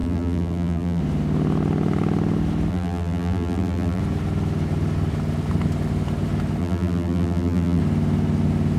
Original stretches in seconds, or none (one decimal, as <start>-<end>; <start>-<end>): 1.0-2.7; 4.0-6.6; 7.8-8.8